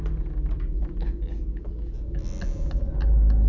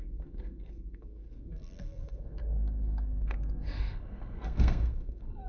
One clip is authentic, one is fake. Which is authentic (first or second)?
first